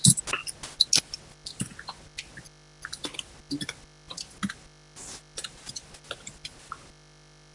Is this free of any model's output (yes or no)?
yes